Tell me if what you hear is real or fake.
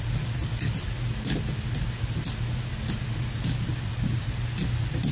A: real